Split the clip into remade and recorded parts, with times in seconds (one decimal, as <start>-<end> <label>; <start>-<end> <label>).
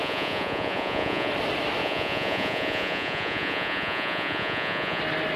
0.0-1.3 remade; 1.3-1.8 recorded; 1.8-5.0 remade; 5.0-5.4 recorded